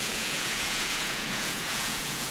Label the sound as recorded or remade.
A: remade